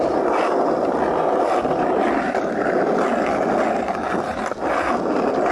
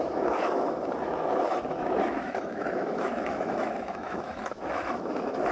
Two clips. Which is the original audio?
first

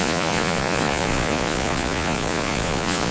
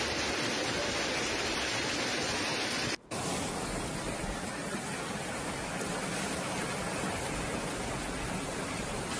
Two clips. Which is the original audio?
second